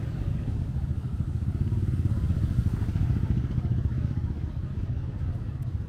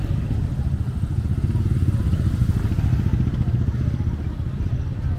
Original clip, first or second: second